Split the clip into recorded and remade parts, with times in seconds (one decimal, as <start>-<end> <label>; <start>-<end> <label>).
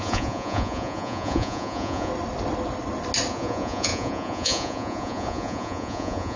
0.0-2.1 remade; 2.1-3.3 recorded; 3.3-6.4 remade